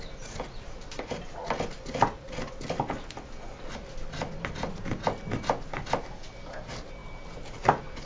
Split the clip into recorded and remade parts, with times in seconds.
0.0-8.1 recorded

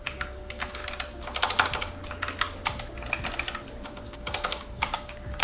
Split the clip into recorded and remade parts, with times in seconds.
0.0-0.8 remade; 0.8-4.0 recorded; 4.0-5.4 remade

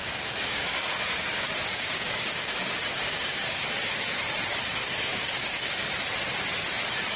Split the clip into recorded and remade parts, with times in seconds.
0.0-3.6 remade; 3.6-4.8 recorded; 4.8-5.8 remade; 5.8-7.2 recorded